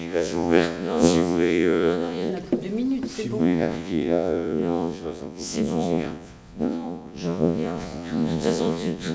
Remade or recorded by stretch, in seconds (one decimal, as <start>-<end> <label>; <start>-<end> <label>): 0.0-2.3 remade; 2.3-3.4 recorded; 3.4-9.1 remade

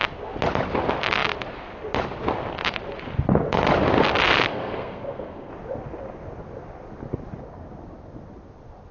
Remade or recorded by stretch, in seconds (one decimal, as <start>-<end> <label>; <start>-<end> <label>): 0.0-4.5 recorded; 4.5-5.5 remade; 5.5-8.9 recorded

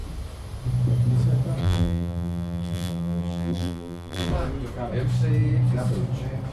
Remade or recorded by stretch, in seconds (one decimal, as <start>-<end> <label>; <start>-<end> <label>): 0.0-1.6 recorded; 1.6-4.3 remade; 4.3-6.5 recorded

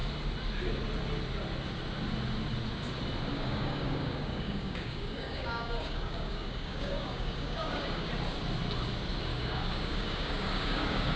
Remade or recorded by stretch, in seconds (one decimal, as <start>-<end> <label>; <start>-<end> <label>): 0.0-3.3 recorded; 3.3-8.1 remade; 8.1-9.3 recorded; 9.3-11.2 remade

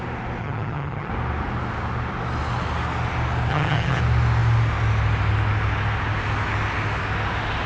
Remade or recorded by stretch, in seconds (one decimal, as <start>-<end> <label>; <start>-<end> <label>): 0.0-0.4 recorded; 0.4-1.1 remade; 1.1-3.5 recorded; 3.5-4.0 remade; 4.0-7.7 recorded